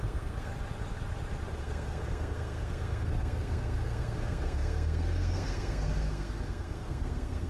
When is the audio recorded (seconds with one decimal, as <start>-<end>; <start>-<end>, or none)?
0.5-1.6